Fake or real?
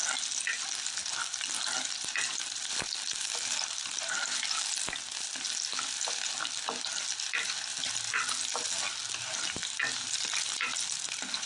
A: real